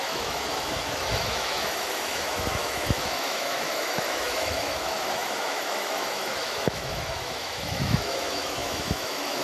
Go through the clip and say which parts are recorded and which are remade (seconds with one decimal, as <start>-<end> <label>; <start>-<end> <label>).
0.0-9.4 remade